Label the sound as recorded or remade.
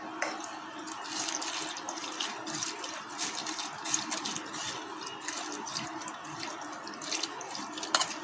recorded